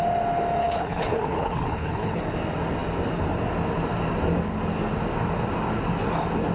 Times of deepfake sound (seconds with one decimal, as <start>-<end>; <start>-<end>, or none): 0.6-2.2